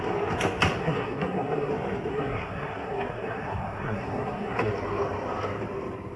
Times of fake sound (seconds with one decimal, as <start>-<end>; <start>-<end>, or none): 0.8-1.7; 2.1-4.7